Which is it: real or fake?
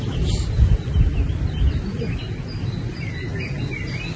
real